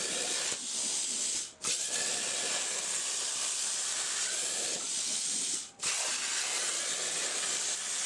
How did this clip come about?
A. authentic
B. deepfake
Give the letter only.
A